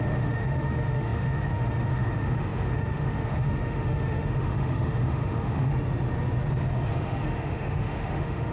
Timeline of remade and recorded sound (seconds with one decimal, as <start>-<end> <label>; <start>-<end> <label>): 0.0-5.7 remade; 5.7-6.9 recorded; 6.9-8.5 remade